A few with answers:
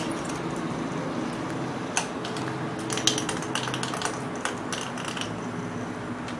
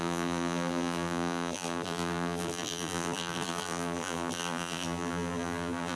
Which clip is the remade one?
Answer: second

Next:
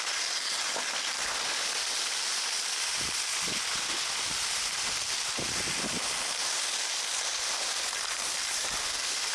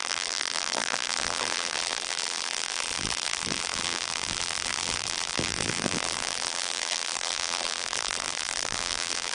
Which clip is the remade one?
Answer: second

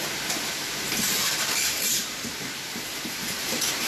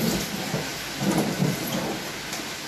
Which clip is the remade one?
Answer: first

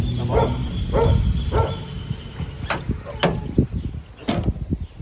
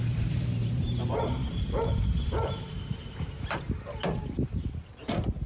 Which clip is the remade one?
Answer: second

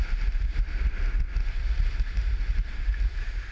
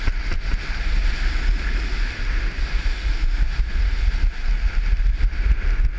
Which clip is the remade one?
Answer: first